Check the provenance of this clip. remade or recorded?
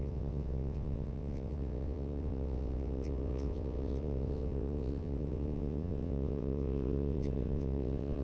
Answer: remade